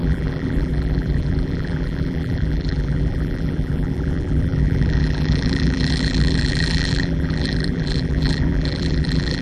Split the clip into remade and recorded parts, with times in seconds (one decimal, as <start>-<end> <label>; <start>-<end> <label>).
0.0-9.4 remade